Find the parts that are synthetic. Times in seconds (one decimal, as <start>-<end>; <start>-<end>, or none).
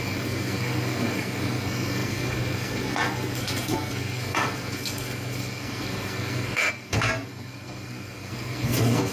0.0-9.1